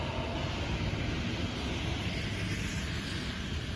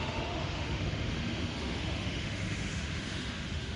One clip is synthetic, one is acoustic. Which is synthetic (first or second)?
second